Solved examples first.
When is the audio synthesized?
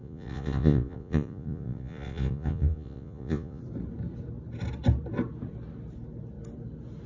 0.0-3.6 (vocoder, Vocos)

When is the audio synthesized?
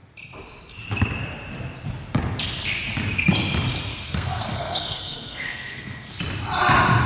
3.9-6.2 (codec, SNAC)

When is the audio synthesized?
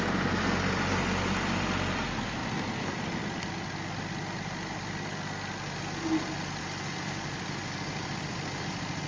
none